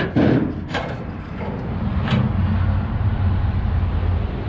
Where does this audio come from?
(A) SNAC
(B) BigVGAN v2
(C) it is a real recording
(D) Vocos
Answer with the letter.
C